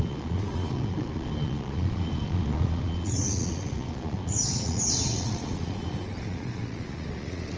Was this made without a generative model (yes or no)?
no